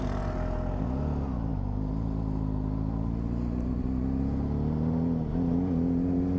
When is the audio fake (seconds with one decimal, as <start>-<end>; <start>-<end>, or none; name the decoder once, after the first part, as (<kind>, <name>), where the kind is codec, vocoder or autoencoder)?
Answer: none